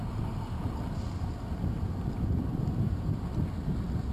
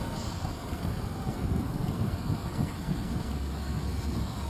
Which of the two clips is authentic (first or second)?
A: first